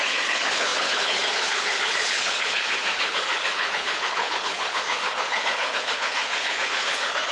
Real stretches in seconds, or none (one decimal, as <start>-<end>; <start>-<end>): none